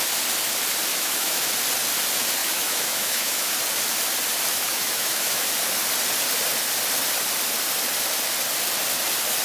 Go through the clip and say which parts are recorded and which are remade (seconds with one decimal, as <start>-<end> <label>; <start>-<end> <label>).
0.0-0.9 recorded; 0.9-1.5 remade; 1.5-2.4 recorded; 2.4-3.5 remade; 3.5-4.5 recorded; 4.5-5.5 remade; 5.5-9.4 recorded